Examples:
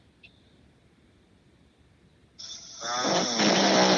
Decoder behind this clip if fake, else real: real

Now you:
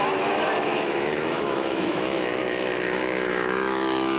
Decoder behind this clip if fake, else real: fake, autoencoder, DAC-VAE